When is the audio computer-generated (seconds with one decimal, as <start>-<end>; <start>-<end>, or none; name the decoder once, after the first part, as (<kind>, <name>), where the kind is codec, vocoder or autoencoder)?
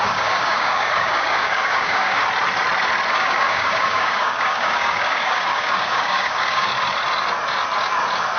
0.0-2.2 (codec, DAC); 3.1-6.7